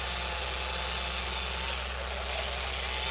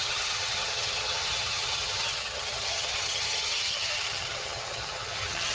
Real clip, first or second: first